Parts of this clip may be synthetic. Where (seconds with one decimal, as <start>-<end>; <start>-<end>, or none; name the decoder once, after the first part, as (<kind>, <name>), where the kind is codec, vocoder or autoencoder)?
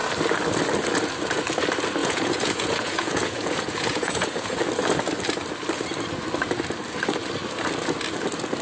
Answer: 2.0-4.6 (vocoder, Vocos)